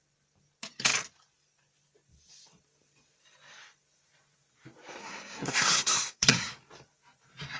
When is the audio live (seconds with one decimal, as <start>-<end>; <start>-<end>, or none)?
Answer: 0.0-5.0; 6.5-7.6